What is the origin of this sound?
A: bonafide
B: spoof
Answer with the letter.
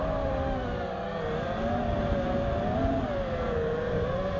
A